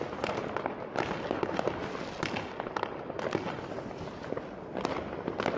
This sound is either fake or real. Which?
real